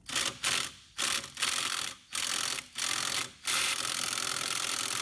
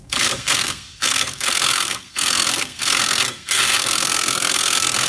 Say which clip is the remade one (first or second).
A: second